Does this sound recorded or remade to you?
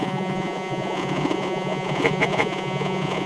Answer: remade